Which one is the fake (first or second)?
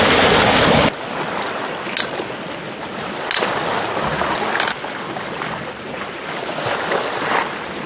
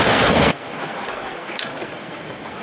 second